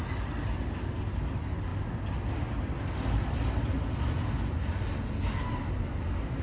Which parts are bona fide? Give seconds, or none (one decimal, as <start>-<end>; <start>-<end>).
0.0-6.4